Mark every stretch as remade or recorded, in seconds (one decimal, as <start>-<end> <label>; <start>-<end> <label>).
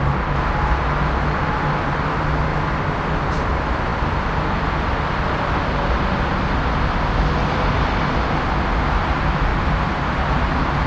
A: 0.0-2.5 recorded; 2.5-3.1 remade; 3.1-9.5 recorded; 9.5-10.9 remade